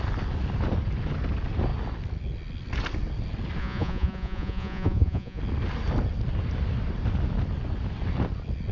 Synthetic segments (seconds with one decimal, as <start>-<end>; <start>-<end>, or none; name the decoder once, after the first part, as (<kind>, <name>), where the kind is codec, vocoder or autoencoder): 3.6-5.4 (vocoder, Vocos)